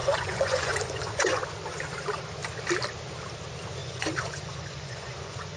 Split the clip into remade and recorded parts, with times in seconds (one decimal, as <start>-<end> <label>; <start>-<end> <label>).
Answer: 0.0-1.4 remade; 1.4-3.8 recorded; 3.8-5.6 remade